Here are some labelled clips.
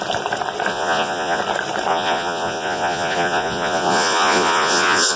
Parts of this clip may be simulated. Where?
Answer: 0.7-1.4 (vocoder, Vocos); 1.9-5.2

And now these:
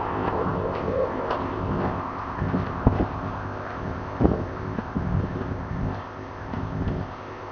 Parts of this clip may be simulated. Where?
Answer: 0.0-7.5 (codec, ZipCodec)

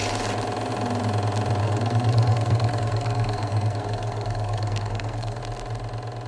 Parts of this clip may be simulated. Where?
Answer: 1.6-5.4 (codec, SNAC)